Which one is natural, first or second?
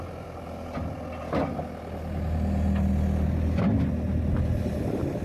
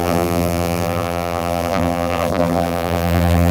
first